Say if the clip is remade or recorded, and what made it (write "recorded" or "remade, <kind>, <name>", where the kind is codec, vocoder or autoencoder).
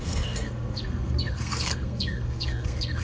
remade, codec, SNAC